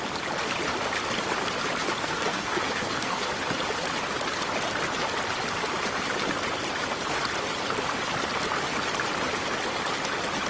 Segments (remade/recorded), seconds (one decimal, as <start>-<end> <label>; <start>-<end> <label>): 0.0-2.0 recorded; 2.0-3.3 remade; 3.3-10.5 recorded